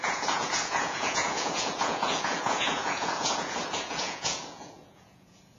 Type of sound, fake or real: fake